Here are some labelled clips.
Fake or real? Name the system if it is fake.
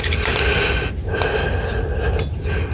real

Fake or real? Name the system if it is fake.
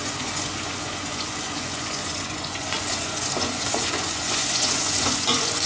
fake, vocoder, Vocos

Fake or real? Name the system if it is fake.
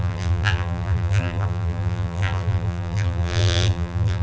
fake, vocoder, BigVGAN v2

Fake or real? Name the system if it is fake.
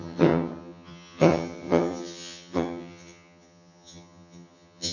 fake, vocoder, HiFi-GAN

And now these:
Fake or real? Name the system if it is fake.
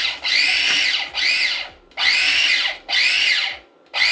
real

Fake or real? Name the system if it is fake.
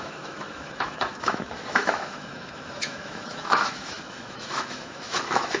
fake, autoencoder, DAC-VAE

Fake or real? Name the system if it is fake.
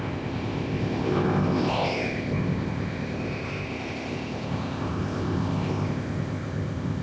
fake, codec, ZipCodec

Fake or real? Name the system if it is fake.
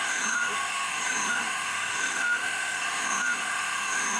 fake, autoencoder, DAC-VAE